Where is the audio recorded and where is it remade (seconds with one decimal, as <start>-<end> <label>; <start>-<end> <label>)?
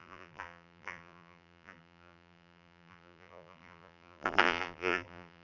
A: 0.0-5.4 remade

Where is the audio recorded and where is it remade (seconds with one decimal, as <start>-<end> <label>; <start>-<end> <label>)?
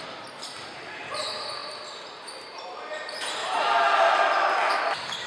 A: 0.0-3.4 remade; 3.4-4.8 recorded; 4.8-5.3 remade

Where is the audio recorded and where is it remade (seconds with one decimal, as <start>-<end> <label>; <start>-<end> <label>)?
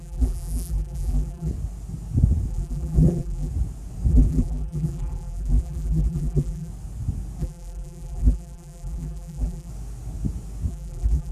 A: 0.0-1.5 remade; 1.5-2.5 recorded; 2.5-3.5 remade; 3.5-4.1 recorded; 4.1-6.7 remade; 6.7-7.4 recorded; 7.4-9.7 remade; 9.7-10.7 recorded; 10.7-11.3 remade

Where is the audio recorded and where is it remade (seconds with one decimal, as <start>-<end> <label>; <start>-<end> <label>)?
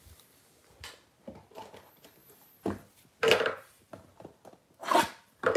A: 0.0-5.6 recorded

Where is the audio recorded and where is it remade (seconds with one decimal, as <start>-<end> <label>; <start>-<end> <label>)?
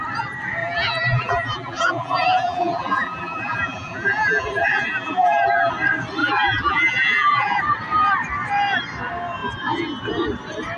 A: 0.0-0.6 recorded; 0.6-5.7 remade; 5.7-6.2 recorded; 6.2-7.6 remade; 7.6-10.8 recorded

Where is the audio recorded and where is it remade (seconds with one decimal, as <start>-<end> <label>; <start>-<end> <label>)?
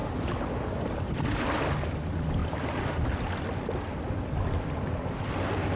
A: 0.0-1.7 recorded; 1.7-2.4 remade; 2.4-5.2 recorded; 5.2-5.8 remade